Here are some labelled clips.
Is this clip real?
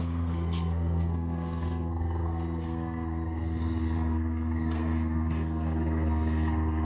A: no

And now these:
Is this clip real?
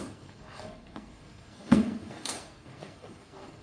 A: no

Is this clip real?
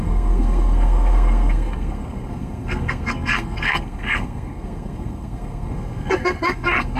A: no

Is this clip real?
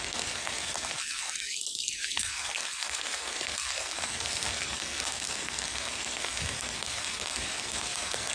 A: no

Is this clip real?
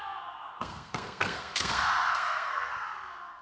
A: no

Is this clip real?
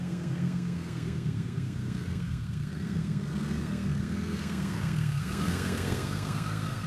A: no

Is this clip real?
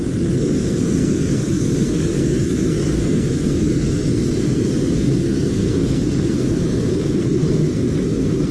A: no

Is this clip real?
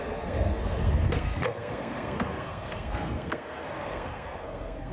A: no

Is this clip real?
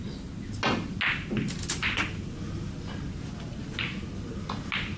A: yes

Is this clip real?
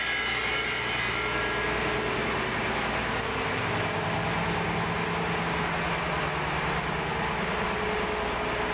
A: yes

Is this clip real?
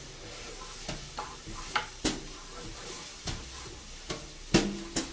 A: yes